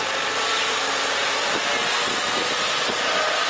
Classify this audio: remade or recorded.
recorded